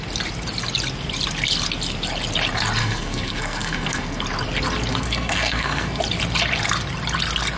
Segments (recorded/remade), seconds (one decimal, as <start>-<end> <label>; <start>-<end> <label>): 0.0-2.8 recorded; 2.8-4.2 remade; 4.2-4.9 recorded; 4.9-6.0 remade; 6.0-7.6 recorded